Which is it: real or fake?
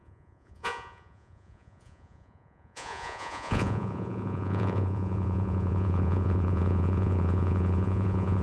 fake